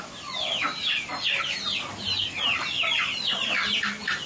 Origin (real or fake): real